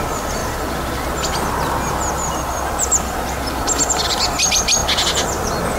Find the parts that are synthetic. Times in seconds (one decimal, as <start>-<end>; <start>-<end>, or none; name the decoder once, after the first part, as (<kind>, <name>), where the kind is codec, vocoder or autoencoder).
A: 0.0-0.4 (vocoder, BigVGAN v2); 3.9-5.8

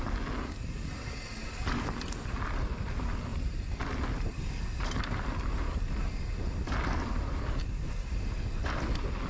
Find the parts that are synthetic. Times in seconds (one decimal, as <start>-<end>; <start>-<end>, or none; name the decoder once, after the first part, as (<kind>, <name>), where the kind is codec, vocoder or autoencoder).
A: none

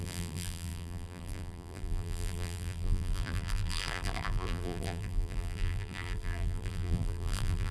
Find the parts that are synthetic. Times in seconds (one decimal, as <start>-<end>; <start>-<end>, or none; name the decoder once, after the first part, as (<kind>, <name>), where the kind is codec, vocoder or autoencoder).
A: 0.0-7.7 (vocoder, BigVGAN v2)